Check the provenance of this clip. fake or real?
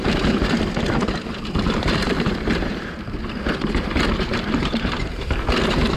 fake